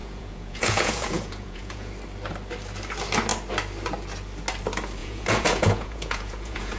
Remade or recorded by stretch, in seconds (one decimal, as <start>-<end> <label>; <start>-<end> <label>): 0.0-1.9 remade; 1.9-5.0 recorded; 5.0-6.8 remade